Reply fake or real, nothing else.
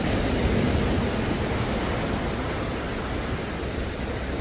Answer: real